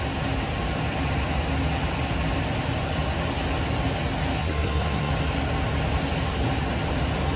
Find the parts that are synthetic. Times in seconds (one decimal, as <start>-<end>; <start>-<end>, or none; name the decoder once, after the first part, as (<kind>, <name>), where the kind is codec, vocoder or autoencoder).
4.4-5.1 (codec, SNAC)

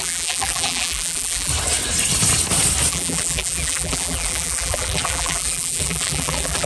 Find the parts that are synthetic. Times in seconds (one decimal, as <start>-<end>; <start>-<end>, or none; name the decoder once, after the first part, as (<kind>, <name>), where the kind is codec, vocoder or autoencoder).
0.0-1.5 (vocoder, BigVGAN v2); 2.9-6.7

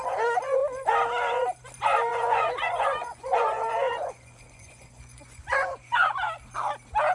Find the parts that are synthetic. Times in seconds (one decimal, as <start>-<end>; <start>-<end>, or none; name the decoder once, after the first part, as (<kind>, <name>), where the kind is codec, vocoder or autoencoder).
2.1-6.2 (vocoder, Vocos)

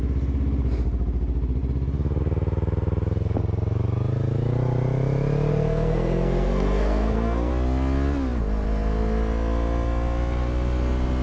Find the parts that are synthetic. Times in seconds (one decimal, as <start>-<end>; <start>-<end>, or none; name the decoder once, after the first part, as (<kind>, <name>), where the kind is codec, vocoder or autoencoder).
5.5-7.5 (codec, SNAC)

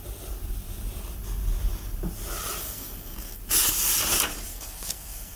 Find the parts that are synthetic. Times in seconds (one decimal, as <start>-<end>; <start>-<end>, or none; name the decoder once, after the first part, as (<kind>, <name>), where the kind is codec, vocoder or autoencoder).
2.6-3.4 (codec, SNAC); 4.5-5.4

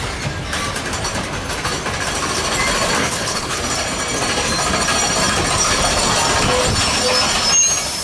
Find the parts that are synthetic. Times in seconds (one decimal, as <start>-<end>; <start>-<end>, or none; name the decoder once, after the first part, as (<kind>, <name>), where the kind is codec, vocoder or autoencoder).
3.0-3.6 (codec, HILCodec)

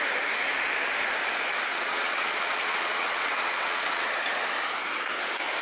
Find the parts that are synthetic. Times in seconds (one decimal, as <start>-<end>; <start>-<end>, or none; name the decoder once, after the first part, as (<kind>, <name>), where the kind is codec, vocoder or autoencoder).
1.7-4.2 (vocoder, WaveNeXt)